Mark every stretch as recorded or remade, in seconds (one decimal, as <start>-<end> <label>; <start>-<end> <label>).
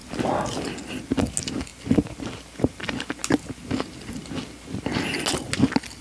0.0-6.0 recorded